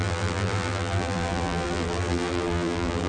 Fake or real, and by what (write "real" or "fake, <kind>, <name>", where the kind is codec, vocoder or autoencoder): fake, vocoder, BigVGAN v2